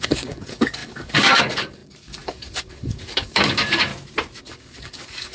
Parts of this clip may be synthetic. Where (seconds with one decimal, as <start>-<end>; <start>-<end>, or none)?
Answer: 0.0-3.9; 4.4-5.3